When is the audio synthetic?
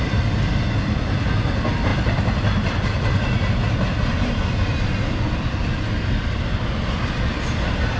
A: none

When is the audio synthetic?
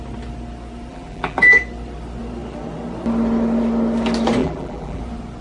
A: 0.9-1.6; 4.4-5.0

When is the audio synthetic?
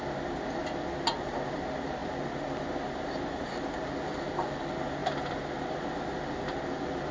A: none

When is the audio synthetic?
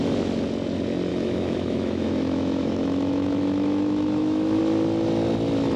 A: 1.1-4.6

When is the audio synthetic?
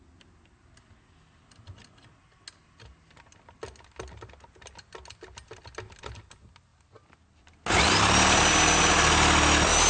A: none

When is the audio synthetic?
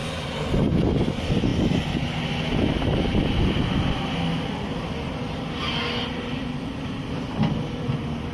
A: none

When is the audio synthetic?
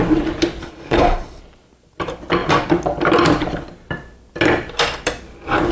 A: 0.6-1.4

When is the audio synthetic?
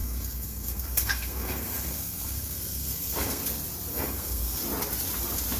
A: 0.0-3.4; 3.9-4.6